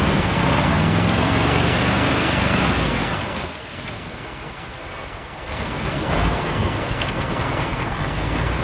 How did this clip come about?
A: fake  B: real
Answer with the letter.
A